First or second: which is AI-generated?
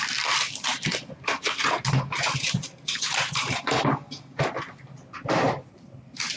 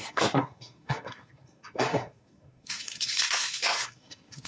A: second